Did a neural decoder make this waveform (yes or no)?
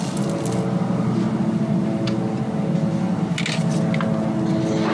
no